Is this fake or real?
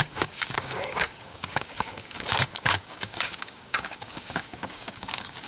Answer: fake